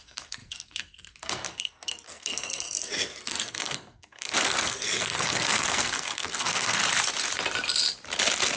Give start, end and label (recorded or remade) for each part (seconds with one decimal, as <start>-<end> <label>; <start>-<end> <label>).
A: 0.0-6.8 remade; 6.8-8.6 recorded